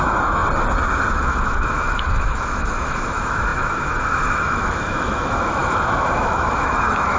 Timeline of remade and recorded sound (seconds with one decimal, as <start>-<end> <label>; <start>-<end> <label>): 0.0-0.4 remade; 0.4-1.1 recorded; 1.1-7.2 remade